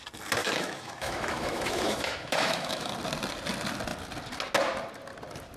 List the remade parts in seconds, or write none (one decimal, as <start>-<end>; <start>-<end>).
0.4-2.9